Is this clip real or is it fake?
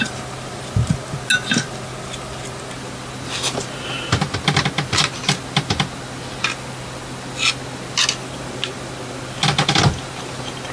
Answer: real